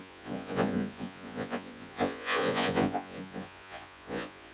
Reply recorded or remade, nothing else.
remade